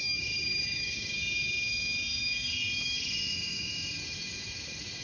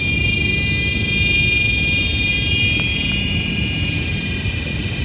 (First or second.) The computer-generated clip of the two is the first